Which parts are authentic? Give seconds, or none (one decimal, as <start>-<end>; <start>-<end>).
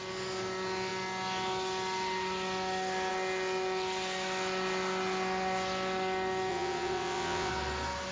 0.0-6.5; 7.5-8.1